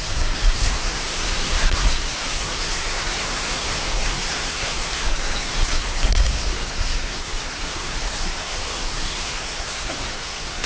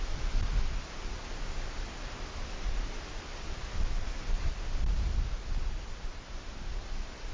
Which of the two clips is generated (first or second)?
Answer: first